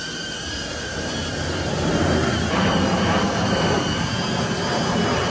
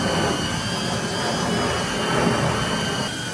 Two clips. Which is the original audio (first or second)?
second